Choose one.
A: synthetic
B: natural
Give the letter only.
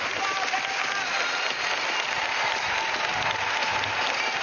B